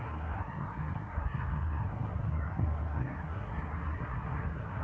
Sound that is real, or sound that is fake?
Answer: fake